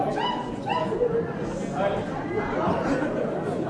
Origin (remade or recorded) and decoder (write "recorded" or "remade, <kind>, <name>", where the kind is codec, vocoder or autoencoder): recorded